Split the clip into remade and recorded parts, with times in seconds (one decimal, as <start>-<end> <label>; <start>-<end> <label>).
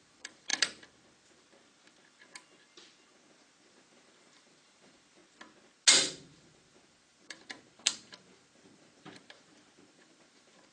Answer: 0.0-0.5 remade; 0.5-3.6 recorded; 3.6-5.2 remade; 5.2-6.2 recorded; 6.2-10.7 remade